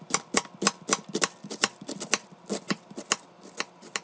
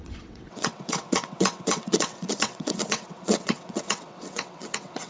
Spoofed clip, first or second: second